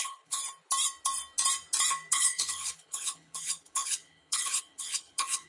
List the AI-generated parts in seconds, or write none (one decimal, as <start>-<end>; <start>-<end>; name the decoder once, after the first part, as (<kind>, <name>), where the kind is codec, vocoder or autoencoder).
0.0-0.4 (codec, HILCodec); 2.1-5.5